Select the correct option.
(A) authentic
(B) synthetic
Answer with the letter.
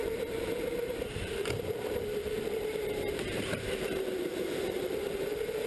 B